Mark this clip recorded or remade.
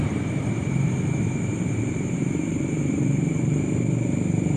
remade